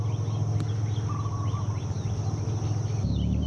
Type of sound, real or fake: real